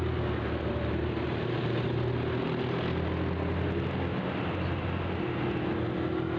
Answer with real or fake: real